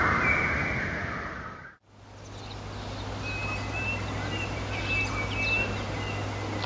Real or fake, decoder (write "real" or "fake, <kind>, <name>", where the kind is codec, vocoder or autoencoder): real